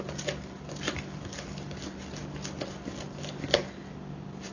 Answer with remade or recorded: recorded